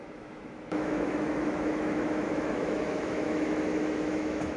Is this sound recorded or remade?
remade